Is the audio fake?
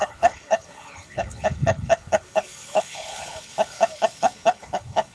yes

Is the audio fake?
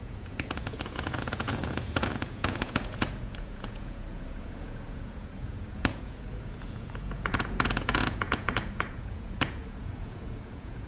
yes